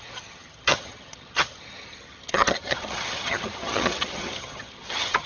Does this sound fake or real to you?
fake